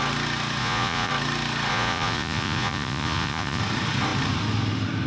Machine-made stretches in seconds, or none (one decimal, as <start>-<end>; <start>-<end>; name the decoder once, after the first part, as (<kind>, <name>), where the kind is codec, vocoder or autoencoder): 0.6-1.1 (vocoder, Vocos); 1.7-3.6